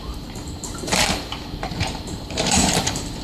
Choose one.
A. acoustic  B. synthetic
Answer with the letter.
B